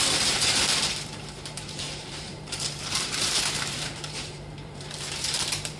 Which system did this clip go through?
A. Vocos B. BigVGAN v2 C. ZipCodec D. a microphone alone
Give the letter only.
B